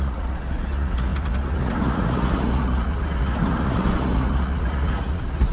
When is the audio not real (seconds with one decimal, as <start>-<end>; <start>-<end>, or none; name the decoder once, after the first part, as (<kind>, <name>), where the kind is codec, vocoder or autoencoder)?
0.0-5.5 (vocoder, Vocos)